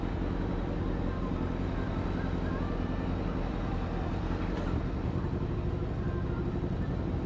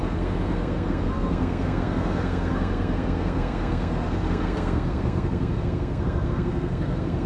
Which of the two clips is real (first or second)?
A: first